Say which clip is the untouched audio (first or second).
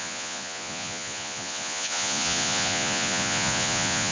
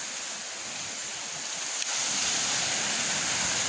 second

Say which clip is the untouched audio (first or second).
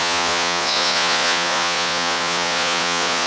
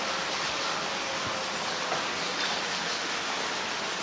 second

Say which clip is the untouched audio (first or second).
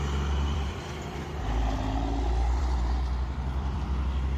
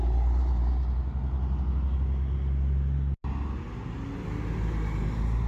second